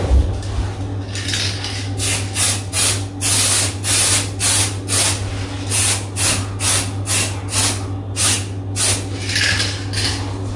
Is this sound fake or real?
real